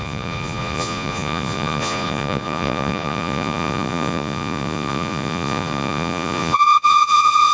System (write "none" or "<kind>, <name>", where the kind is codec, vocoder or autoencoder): vocoder, Vocos